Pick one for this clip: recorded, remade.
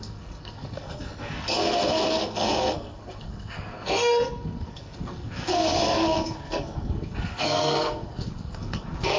remade